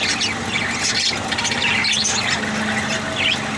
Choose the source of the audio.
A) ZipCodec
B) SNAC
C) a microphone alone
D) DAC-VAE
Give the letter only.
C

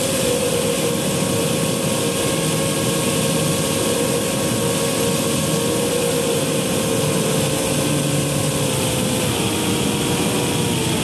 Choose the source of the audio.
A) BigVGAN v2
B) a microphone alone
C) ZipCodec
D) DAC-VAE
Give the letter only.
B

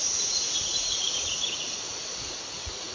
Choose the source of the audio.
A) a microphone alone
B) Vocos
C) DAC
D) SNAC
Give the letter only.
B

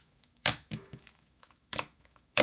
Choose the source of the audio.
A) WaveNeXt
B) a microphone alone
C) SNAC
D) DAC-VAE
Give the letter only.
D